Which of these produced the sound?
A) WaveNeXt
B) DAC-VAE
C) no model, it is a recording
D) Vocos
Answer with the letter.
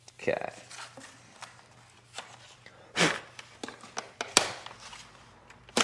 C